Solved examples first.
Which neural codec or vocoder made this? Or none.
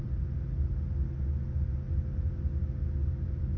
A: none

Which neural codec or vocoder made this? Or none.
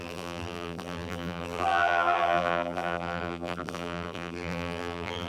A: vocoder, BigVGAN v2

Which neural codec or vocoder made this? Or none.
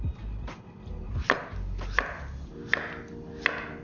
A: none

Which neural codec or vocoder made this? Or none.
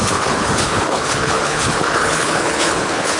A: codec, HILCodec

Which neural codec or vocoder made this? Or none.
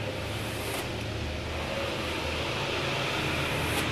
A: none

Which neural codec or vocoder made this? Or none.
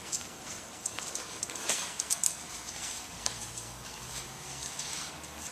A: codec, SNAC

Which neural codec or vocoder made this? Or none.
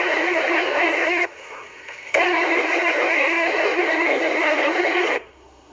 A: codec, SNAC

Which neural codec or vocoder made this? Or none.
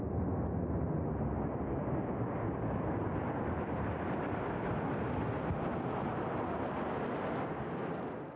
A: none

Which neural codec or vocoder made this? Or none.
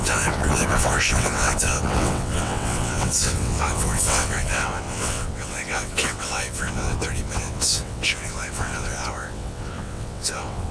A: vocoder, WaveNeXt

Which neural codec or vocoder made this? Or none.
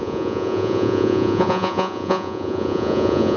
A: vocoder, Vocos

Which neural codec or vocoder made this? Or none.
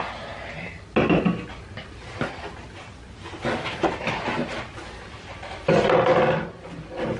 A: none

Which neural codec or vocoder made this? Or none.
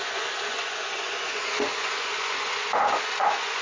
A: vocoder, Vocos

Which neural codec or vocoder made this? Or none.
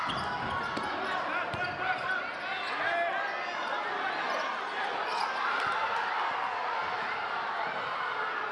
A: none